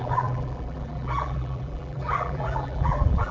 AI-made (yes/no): yes